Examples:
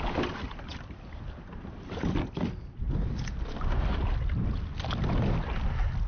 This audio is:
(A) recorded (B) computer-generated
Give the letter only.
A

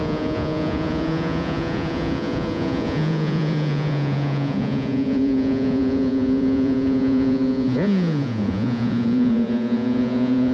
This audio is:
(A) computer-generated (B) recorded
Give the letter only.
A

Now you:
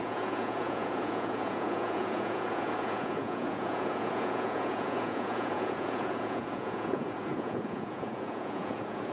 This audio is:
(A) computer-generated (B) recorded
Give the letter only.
A